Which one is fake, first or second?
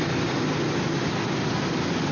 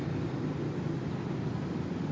second